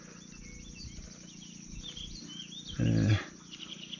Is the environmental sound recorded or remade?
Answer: recorded